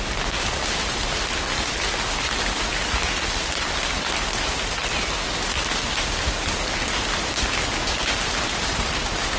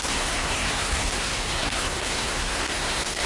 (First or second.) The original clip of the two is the first